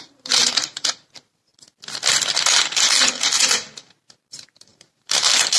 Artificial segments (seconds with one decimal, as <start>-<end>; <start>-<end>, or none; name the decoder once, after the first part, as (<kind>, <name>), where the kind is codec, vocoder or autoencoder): 0.0-1.5 (vocoder, BigVGAN v2); 3.8-5.6